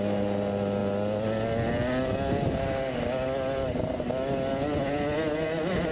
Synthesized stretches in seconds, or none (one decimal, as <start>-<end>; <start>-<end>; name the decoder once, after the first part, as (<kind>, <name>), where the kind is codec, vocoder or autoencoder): none

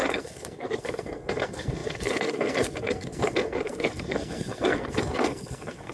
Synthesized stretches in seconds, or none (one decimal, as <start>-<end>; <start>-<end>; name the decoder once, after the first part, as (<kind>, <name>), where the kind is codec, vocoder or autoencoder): 0.0-5.9 (codec, SNAC)

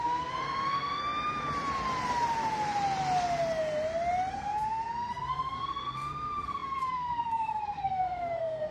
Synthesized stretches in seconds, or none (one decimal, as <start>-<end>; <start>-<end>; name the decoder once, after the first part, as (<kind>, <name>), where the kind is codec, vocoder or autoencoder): 0.0-1.0 (codec, SNAC); 4.3-8.7

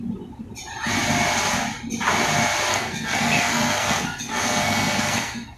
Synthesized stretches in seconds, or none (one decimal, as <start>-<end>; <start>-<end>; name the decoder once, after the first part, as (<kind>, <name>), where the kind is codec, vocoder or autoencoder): 2.7-5.6 (codec, SNAC)

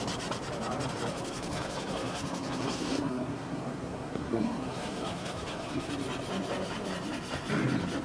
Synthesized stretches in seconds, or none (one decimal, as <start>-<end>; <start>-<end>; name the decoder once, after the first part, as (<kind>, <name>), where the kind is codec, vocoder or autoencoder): 1.1-5.9 (codec, SNAC)

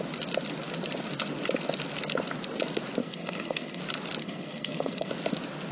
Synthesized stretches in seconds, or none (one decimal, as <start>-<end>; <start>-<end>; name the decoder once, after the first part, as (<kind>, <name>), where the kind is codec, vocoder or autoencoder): 3.0-3.8 (codec, SNAC); 4.2-5.1

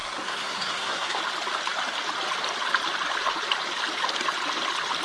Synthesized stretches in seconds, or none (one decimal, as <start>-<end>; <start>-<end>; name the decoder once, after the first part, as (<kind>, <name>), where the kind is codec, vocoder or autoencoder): 0.0-1.2 (codec, SNAC)

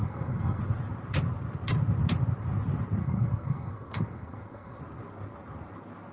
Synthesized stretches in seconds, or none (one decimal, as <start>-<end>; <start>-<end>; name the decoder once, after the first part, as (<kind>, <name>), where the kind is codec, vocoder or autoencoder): 0.0-0.6 (codec, SNAC); 3.0-4.8